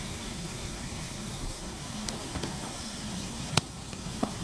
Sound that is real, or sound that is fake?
fake